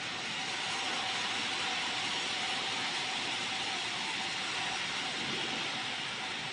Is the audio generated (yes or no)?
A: no